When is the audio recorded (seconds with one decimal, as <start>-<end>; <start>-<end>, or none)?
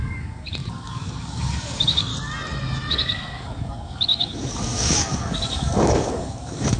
2.1-2.9